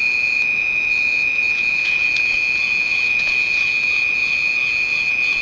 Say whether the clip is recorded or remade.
remade